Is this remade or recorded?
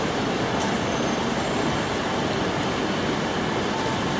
recorded